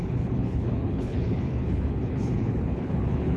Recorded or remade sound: remade